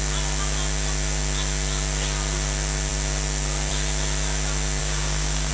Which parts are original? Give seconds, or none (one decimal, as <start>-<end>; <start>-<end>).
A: 0.0-4.8